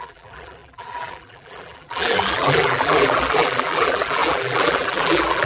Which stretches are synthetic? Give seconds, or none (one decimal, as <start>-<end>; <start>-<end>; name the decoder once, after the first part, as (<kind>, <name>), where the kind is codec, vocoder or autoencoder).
0.0-5.5 (vocoder, BigVGAN v2)